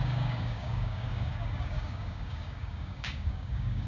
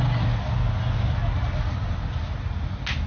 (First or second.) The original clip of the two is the second